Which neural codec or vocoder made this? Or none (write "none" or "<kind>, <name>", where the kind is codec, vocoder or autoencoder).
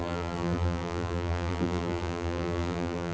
vocoder, BigVGAN v2